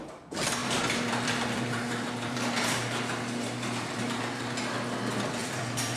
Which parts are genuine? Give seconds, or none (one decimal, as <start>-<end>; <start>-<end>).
0.0-0.6; 4.2-5.4